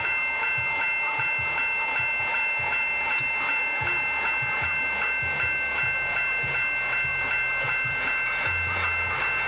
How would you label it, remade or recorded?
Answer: recorded